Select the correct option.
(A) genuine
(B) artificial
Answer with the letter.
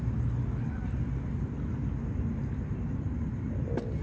A